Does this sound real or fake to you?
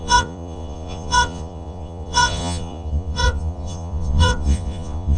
fake